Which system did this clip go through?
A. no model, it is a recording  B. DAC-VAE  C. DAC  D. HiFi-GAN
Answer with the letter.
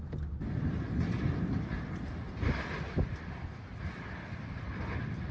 A